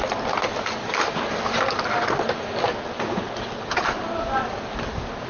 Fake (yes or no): no